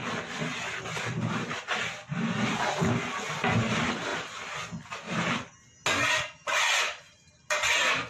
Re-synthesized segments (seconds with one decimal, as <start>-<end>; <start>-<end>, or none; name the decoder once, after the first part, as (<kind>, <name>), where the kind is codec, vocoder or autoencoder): 0.0-2.6 (vocoder, BigVGAN v2)